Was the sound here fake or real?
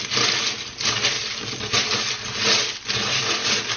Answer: real